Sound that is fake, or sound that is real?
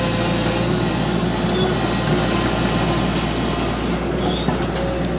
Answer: real